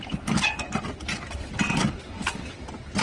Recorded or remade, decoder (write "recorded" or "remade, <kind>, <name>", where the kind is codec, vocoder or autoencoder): recorded